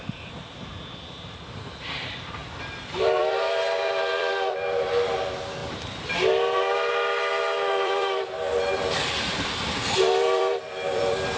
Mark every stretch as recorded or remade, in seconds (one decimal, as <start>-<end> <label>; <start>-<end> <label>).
0.0-2.4 remade; 2.4-3.0 recorded; 3.0-5.6 remade; 5.6-7.7 recorded; 7.7-11.4 remade

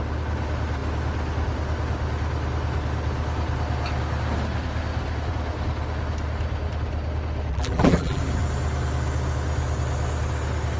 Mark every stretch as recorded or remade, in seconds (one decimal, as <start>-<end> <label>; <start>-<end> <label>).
0.0-7.5 recorded; 7.5-8.2 remade; 8.2-10.8 recorded

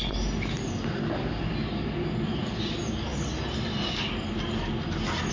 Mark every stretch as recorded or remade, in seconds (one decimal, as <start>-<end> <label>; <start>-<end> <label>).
0.0-5.3 recorded

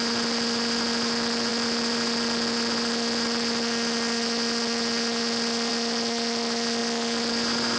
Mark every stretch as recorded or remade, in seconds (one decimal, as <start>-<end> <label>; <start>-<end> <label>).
0.0-7.8 recorded

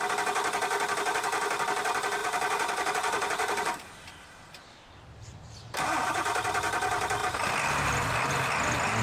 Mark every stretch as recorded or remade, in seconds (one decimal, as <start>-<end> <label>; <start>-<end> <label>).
0.0-2.2 recorded; 2.2-6.1 remade; 6.1-7.2 recorded; 7.2-8.1 remade; 8.1-9.0 recorded

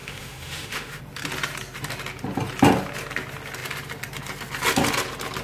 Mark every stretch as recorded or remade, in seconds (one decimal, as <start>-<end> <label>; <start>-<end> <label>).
0.0-1.0 remade; 1.0-5.4 recorded

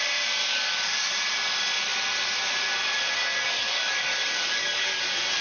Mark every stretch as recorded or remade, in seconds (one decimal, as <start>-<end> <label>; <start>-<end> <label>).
0.0-0.4 recorded; 0.4-1.1 remade; 1.1-3.2 recorded; 3.2-5.0 remade; 5.0-5.4 recorded

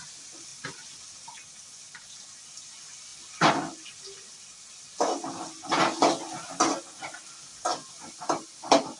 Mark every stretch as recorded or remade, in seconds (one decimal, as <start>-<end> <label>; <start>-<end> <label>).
0.0-9.0 recorded